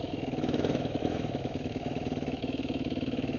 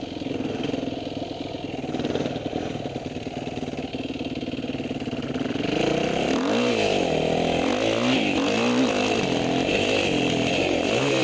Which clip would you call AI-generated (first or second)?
first